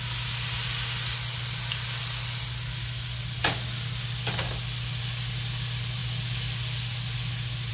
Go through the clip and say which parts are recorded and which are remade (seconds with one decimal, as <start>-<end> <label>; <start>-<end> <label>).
0.0-7.7 recorded